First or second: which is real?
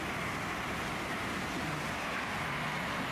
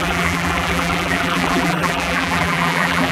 first